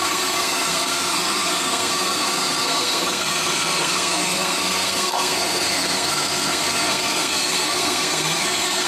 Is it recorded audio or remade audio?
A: remade